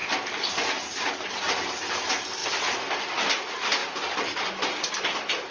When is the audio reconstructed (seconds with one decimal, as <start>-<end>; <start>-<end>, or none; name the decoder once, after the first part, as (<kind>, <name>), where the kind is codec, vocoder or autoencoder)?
0.0-1.1 (vocoder, BigVGAN v2); 2.4-3.3; 3.8-4.8